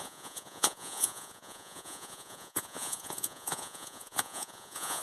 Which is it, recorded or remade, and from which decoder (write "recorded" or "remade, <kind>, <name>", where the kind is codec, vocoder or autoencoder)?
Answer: remade, vocoder, Vocos